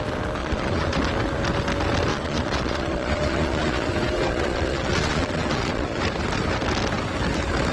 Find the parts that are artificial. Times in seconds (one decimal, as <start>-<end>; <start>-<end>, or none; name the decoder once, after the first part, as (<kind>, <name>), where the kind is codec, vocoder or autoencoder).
0.4-0.9 (vocoder, Vocos); 2.1-3.9; 4.3-6.0